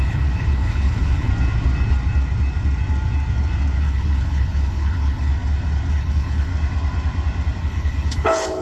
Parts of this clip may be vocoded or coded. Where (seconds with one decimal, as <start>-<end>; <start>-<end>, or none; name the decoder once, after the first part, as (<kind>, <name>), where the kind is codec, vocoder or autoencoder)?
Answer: 0.0-1.3 (codec, HILCodec); 3.8-5.3; 5.9-6.5; 7.6-8.6